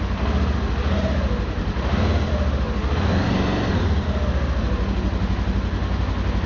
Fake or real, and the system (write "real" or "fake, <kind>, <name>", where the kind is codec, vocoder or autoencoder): real